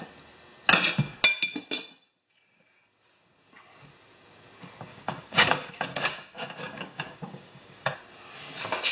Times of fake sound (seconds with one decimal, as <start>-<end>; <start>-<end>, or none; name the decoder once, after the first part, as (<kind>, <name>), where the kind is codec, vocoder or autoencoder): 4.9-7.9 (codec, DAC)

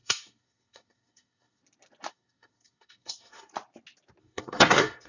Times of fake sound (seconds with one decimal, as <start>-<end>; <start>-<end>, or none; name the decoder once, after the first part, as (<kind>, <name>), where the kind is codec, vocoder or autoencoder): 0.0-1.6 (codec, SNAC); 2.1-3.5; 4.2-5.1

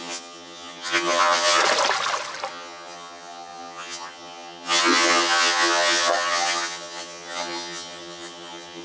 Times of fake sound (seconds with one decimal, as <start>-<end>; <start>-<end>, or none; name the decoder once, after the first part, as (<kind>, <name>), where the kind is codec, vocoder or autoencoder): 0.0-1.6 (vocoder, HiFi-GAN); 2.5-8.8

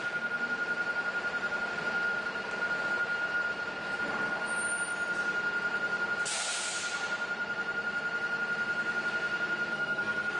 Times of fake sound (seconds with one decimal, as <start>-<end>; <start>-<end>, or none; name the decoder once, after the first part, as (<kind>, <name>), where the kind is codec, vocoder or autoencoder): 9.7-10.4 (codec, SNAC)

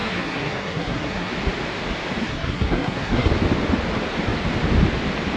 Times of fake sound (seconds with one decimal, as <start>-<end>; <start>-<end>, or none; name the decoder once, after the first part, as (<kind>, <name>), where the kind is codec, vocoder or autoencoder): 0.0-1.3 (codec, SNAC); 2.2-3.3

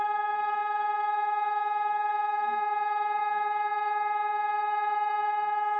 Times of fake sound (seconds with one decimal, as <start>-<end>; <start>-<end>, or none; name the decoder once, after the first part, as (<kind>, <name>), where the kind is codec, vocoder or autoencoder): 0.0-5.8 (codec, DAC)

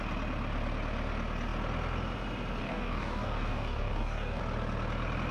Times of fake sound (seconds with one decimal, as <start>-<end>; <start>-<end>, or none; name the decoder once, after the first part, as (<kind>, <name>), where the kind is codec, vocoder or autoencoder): 2.6-4.4 (codec, DAC)